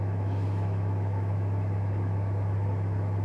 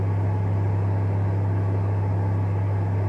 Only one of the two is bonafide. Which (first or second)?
second